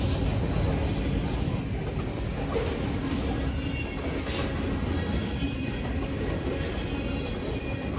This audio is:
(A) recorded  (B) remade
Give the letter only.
A